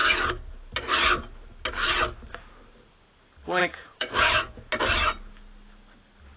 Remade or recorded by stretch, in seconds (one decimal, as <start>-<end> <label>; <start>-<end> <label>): 0.0-3.6 recorded; 3.6-4.6 remade; 4.6-6.4 recorded